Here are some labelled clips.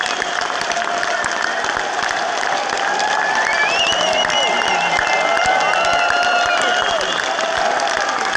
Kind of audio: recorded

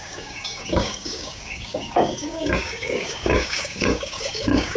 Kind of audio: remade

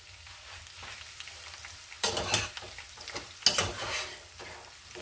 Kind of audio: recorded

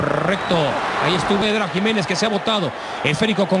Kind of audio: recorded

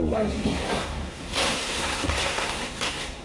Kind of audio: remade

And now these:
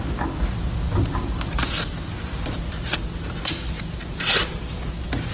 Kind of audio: recorded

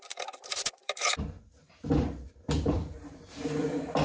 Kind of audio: remade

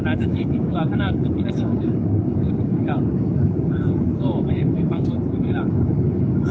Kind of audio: remade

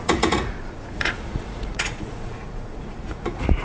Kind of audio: remade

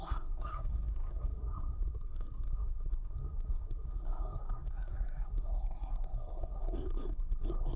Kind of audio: remade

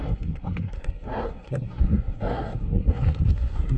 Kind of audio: remade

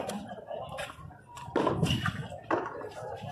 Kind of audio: recorded